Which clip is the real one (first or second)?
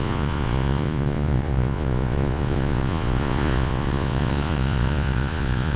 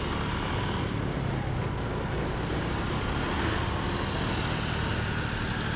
second